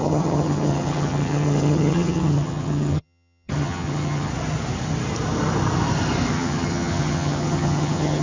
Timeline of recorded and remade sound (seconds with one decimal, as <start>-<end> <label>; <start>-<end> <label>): 0.0-4.3 remade; 4.3-6.3 recorded; 6.3-8.2 remade